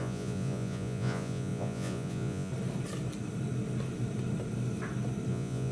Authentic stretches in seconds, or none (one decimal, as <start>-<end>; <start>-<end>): 2.5-5.3